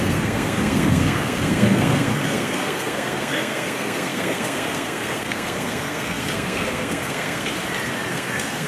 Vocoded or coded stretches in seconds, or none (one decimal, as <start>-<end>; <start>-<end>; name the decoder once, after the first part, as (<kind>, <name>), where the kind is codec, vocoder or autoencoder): 0.0-7.5 (codec, SNAC); 8.1-8.7